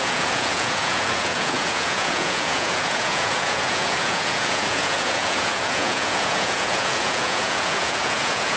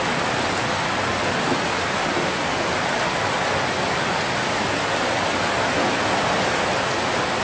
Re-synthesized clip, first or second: first